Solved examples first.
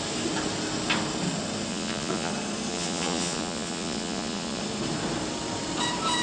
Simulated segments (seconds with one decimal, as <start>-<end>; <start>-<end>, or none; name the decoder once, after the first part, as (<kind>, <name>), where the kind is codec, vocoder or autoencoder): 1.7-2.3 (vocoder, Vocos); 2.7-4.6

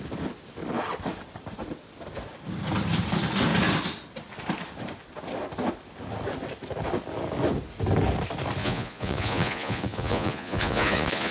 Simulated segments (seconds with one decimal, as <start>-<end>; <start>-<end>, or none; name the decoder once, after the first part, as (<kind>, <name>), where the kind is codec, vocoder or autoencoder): 8.6-11.3 (vocoder, Vocos)

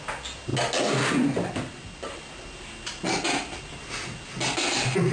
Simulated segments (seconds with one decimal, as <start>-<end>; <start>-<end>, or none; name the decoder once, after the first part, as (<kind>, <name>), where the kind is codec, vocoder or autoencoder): none

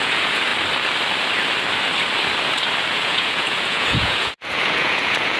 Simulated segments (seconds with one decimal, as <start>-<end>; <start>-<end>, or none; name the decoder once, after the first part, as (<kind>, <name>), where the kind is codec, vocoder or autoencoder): 0.0-0.5 (vocoder, Vocos); 2.9-5.4

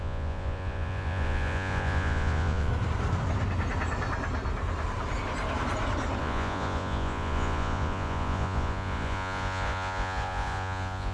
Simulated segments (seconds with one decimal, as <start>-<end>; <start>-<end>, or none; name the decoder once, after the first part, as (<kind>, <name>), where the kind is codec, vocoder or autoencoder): 0.0-2.7 (vocoder, Vocos); 6.2-11.1

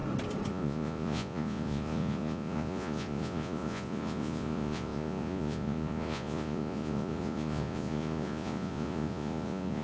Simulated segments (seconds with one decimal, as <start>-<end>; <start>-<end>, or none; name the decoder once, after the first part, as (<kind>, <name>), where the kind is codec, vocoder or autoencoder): 0.5-9.8 (vocoder, Vocos)

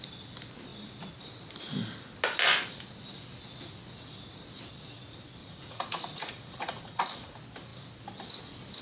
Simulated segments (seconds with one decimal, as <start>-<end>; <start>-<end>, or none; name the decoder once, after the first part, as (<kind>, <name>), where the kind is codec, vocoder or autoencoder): 5.4-7.3 (vocoder, Vocos)